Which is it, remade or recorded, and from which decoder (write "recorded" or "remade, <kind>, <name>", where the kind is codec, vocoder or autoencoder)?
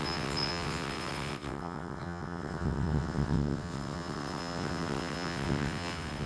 remade, vocoder, WaveNeXt